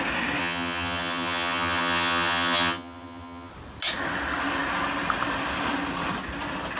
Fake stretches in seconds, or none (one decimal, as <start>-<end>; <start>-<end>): 0.4-3.5